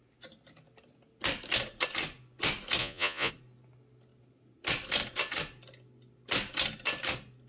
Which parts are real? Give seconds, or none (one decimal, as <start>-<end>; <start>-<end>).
0.0-2.8; 3.3-7.5